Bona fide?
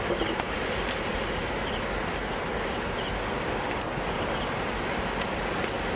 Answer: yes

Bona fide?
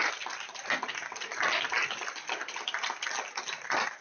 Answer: yes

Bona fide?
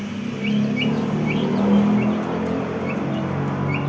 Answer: yes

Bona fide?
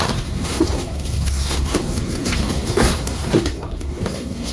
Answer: no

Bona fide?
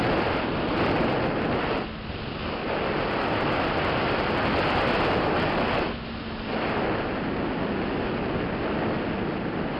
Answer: yes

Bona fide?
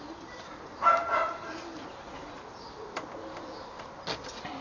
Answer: yes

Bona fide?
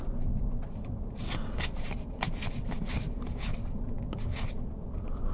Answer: yes